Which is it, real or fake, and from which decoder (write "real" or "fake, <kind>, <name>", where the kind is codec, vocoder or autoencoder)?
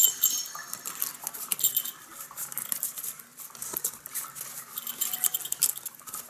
real